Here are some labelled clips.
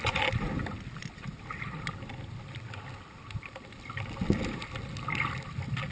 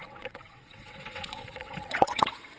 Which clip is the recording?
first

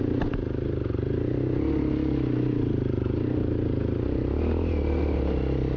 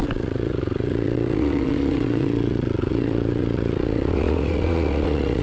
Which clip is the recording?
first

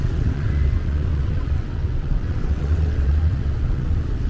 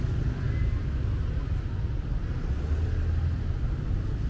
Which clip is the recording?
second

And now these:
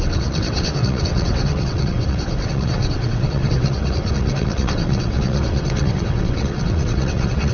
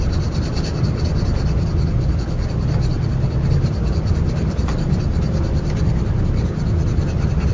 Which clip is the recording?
second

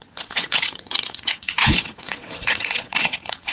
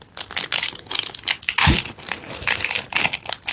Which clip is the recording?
second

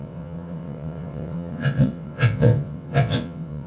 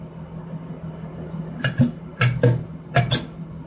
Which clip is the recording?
second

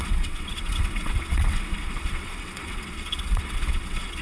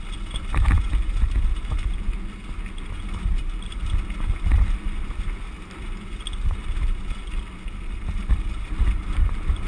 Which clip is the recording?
second